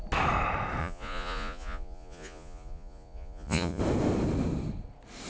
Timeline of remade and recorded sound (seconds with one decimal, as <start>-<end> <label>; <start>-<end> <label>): 0.0-0.8 recorded; 0.8-3.8 remade; 3.8-5.3 recorded